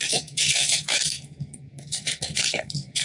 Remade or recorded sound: remade